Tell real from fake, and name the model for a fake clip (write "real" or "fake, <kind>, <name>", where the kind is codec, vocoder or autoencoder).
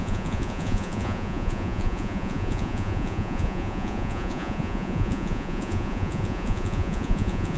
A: fake, vocoder, Vocos